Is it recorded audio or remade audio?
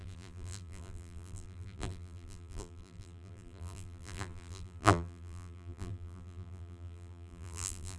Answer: remade